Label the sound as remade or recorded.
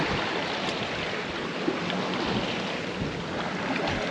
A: recorded